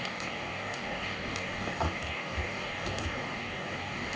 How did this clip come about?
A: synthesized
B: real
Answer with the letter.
A